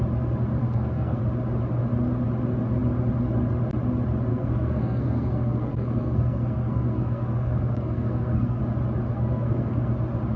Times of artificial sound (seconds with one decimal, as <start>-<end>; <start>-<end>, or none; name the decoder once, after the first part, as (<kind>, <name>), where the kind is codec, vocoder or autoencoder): 0.6-1.2 (codec, SNAC); 4.3-8.6; 9.1-9.9